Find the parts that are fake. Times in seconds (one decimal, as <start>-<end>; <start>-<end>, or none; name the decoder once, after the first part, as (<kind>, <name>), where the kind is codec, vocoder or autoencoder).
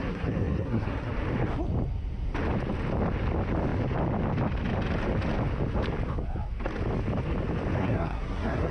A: 0.0-1.1 (codec, SNAC); 7.8-8.7